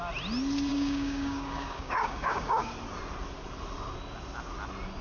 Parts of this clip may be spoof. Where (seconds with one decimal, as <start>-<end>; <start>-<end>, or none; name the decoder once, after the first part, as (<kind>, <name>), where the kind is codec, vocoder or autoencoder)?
0.7-2.7 (codec, DAC)